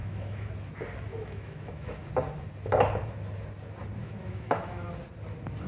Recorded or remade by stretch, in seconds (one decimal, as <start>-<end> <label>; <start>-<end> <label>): 0.0-0.5 remade; 0.5-1.1 recorded; 1.1-2.1 remade; 2.1-4.0 recorded; 4.0-4.9 remade; 4.9-5.7 recorded